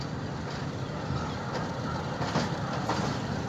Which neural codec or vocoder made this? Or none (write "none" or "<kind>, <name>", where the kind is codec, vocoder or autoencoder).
none